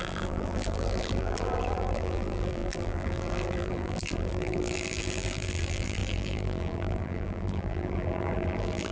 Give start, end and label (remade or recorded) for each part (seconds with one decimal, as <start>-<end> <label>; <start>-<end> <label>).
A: 0.0-8.9 remade